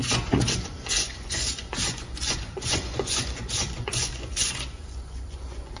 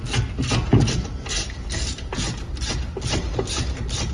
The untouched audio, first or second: second